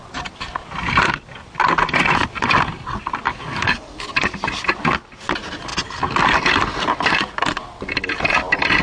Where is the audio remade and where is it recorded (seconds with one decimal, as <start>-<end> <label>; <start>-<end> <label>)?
0.0-3.3 recorded; 3.3-4.0 remade; 4.0-8.8 recorded